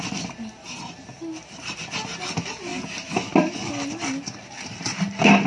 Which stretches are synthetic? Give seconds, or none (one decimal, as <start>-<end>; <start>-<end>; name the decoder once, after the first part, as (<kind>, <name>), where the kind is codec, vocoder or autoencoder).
none